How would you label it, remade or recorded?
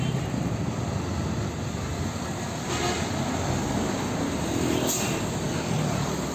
recorded